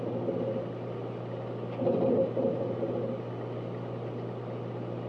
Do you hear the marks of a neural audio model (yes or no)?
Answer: no